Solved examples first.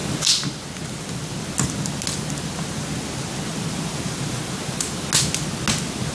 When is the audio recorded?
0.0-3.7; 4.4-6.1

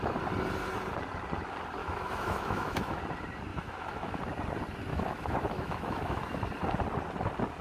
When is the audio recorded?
0.0-1.8; 3.0-3.5; 4.2-4.9; 6.4-7.6